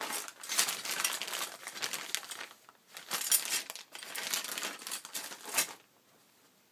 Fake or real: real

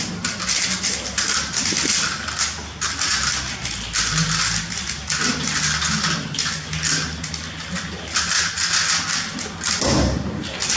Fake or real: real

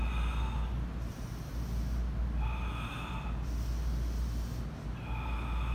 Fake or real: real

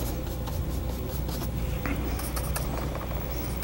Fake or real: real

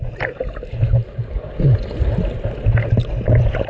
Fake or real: real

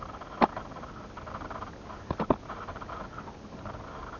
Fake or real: real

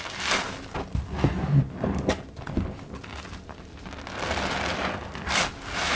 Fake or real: real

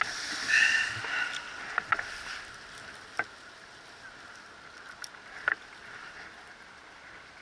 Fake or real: real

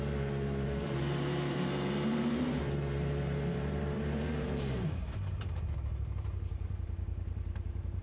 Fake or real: fake